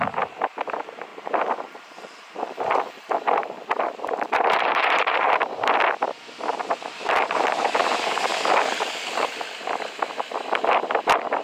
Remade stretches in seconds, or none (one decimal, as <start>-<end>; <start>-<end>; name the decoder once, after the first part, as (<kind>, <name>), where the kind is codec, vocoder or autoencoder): 1.1-5.3 (vocoder, BigVGAN v2); 6.6-7.6